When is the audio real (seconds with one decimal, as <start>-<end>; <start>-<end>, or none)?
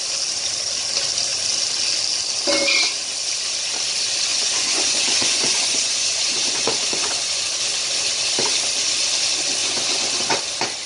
0.0-4.3; 7.4-9.6; 10.4-10.9